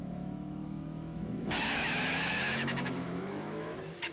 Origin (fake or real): fake